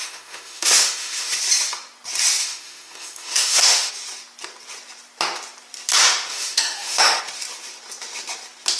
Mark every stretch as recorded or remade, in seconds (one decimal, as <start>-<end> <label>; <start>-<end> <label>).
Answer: 0.0-1.3 remade; 1.3-2.4 recorded; 2.4-3.9 remade; 3.9-6.3 recorded; 6.3-7.2 remade; 7.2-8.8 recorded